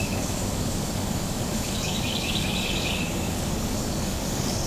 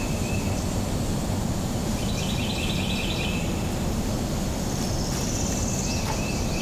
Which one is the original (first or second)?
second